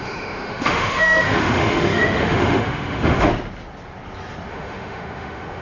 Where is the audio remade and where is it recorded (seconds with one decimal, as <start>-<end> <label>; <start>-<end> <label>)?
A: 0.0-3.3 remade; 3.3-4.5 recorded; 4.5-5.6 remade